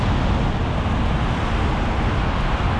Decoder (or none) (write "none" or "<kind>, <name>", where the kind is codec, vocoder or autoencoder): none